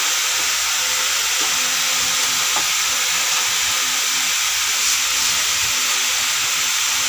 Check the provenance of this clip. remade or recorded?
recorded